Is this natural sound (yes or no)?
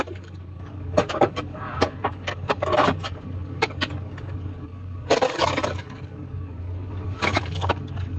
no